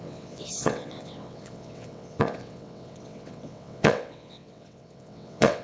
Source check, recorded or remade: remade